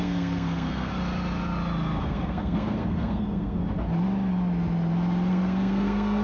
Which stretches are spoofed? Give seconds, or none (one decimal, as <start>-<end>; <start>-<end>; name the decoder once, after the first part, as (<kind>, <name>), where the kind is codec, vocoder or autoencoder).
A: 0.0-0.9 (codec, SNAC); 2.0-3.6; 5.3-6.2